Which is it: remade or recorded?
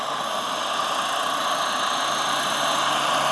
recorded